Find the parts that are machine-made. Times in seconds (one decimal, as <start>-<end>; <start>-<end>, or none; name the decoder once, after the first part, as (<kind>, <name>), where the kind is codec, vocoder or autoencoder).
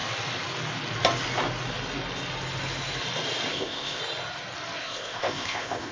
3.5-4.0 (codec, ZipCodec); 4.8-5.9